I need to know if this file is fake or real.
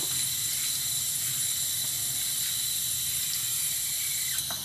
fake